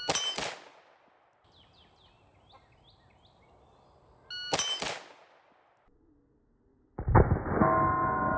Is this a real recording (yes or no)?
yes